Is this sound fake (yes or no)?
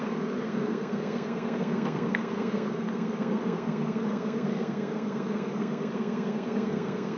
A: yes